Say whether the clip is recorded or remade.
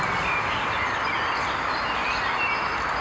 recorded